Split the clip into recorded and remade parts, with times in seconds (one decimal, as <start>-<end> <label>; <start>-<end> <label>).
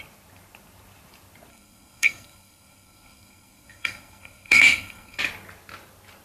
0.0-1.5 recorded; 1.5-5.2 remade; 5.2-6.2 recorded